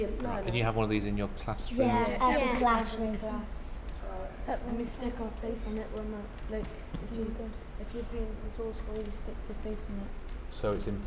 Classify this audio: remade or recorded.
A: recorded